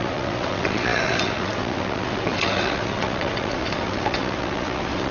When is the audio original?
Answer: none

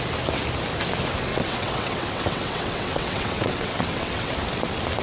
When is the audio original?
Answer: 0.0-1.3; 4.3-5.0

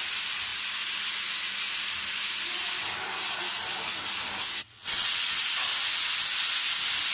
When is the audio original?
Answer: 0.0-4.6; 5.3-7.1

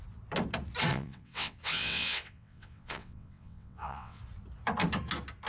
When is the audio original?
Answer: 0.0-0.9; 4.2-5.5

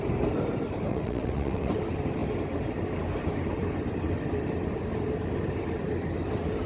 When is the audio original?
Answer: 0.0-0.9; 1.7-6.7

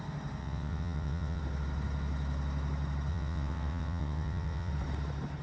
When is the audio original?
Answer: 0.0-0.4; 1.4-3.1; 4.7-5.4